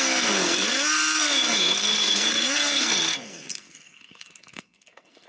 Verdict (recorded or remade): remade